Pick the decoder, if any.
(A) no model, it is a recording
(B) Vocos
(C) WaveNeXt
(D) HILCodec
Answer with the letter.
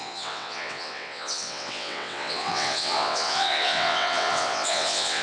C